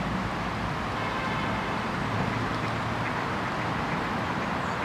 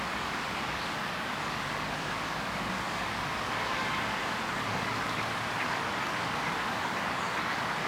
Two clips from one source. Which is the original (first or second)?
first